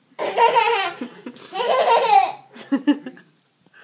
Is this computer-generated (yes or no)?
yes